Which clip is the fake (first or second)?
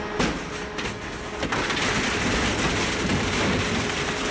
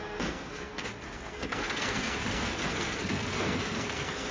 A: second